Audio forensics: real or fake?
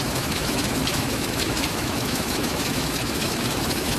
fake